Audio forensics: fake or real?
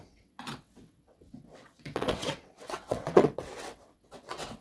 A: fake